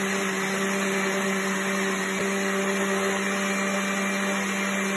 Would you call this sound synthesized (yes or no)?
no